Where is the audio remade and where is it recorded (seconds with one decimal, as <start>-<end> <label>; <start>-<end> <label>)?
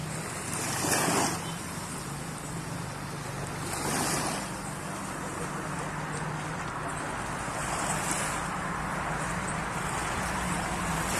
0.0-11.2 recorded